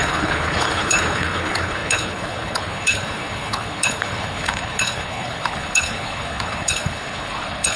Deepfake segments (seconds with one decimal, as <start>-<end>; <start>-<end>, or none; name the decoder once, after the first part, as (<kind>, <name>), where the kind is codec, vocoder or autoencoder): 0.0-7.8 (codec, HILCodec)